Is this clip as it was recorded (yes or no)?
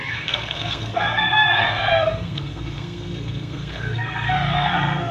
no